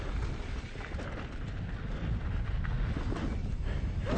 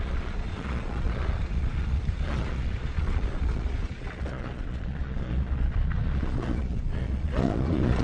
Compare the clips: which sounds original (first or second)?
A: first